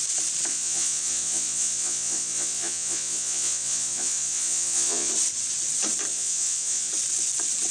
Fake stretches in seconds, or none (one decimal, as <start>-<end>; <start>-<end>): 0.5-5.1; 6.1-6.9